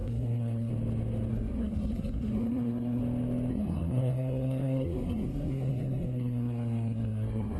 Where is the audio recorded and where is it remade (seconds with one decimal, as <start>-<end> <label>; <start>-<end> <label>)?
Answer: 0.0-0.7 remade; 0.7-1.3 recorded; 1.3-3.0 remade; 3.0-3.5 recorded; 3.5-7.6 remade